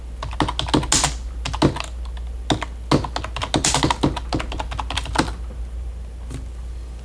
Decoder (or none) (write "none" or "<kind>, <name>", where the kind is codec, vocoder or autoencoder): none